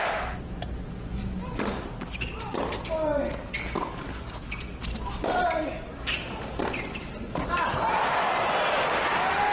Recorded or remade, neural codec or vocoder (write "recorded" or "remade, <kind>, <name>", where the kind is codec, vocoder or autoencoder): recorded